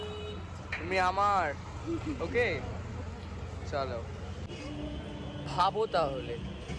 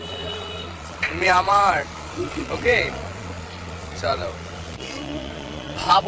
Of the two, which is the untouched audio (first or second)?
first